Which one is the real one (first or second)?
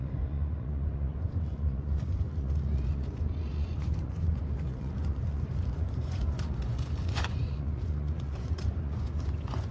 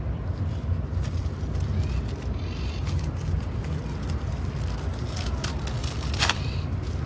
second